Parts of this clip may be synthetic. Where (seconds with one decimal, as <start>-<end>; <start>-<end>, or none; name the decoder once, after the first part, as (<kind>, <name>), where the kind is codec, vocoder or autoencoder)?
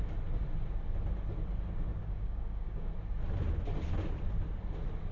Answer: 1.9-2.9 (codec, DAC)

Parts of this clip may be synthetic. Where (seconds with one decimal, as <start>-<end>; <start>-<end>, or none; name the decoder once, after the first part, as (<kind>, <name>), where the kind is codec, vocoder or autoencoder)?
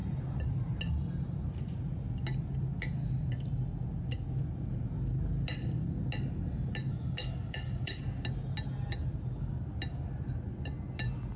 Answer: 6.9-8.0 (codec, DAC)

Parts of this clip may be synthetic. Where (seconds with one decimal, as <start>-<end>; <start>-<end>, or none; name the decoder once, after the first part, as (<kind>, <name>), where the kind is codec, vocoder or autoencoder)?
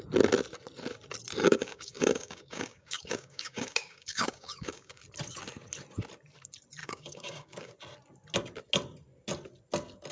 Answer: 1.4-5.0 (codec, DAC); 6.8-7.7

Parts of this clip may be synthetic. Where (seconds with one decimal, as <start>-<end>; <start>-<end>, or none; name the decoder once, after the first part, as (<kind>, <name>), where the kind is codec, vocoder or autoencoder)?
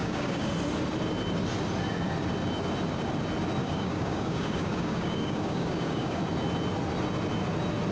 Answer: 0.0-0.5 (codec, DAC); 3.6-6.2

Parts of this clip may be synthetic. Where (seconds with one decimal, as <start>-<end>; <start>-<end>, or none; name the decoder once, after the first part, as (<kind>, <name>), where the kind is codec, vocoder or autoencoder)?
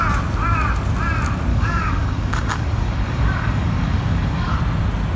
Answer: 1.5-4.6 (codec, DAC)